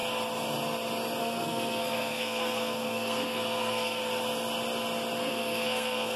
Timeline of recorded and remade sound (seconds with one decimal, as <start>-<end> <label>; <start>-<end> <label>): 0.0-1.2 recorded; 1.2-4.0 remade; 4.0-5.2 recorded; 5.2-6.2 remade